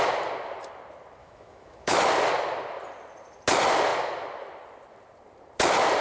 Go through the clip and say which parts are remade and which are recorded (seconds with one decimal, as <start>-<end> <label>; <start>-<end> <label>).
0.0-1.2 recorded; 1.2-2.0 remade; 2.0-6.0 recorded

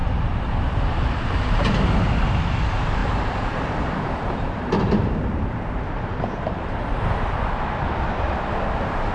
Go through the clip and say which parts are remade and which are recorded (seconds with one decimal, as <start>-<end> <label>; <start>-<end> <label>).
0.0-1.6 remade; 1.6-3.0 recorded; 3.0-7.0 remade; 7.0-9.1 recorded

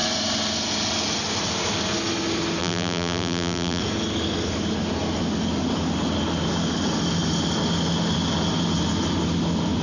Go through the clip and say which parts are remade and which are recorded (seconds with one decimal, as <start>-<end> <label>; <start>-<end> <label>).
0.0-2.6 recorded; 2.6-3.8 remade; 3.8-9.8 recorded